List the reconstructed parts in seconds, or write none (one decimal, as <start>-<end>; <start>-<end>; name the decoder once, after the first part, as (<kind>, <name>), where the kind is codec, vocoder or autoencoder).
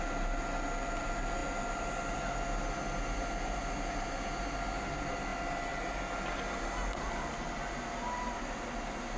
none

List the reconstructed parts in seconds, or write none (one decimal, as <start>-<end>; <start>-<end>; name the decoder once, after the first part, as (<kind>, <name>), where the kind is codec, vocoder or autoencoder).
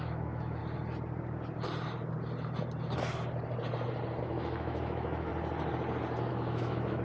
0.0-0.6 (autoencoder, DAC-VAE); 4.2-5.3; 6.3-7.0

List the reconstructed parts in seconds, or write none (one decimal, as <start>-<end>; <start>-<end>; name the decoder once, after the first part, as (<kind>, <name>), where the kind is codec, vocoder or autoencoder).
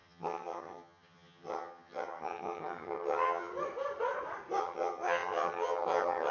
0.0-3.5 (vocoder, HiFi-GAN); 4.6-6.3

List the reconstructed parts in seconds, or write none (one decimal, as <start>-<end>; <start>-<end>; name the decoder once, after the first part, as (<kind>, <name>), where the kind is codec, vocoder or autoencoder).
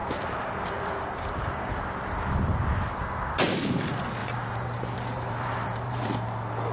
0.0-1.8 (vocoder, BigVGAN v2); 4.2-6.1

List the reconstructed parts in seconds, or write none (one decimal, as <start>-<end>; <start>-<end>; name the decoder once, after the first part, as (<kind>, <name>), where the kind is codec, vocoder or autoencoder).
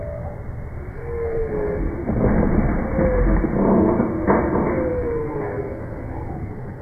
0.9-1.8 (codec, SNAC); 4.9-6.8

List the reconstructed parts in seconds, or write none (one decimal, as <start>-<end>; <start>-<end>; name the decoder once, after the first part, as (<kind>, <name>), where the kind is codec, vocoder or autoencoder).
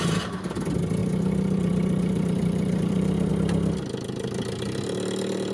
1.0-3.3 (vocoder, BigVGAN v2)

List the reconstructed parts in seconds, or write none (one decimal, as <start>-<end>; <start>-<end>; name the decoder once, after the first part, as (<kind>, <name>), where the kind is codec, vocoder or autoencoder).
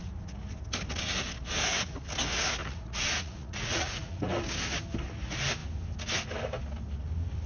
2.6-4.2 (vocoder, Vocos)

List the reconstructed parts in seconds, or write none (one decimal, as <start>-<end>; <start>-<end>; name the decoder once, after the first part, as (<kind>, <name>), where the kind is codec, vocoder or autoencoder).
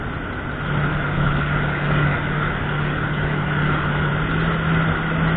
0.9-4.1 (codec, DAC)